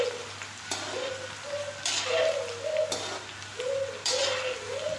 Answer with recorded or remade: recorded